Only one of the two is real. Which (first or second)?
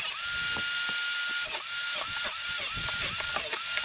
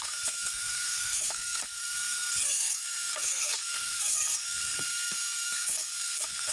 first